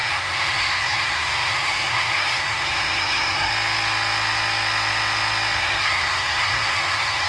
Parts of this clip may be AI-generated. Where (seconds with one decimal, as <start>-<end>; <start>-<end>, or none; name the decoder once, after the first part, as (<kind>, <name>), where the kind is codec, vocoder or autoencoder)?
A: 0.0-3.5 (codec, SNAC); 5.6-7.3